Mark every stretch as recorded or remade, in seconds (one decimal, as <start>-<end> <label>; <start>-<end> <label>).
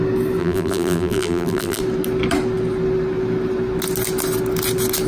0.0-0.4 recorded; 0.4-1.8 remade; 1.8-5.1 recorded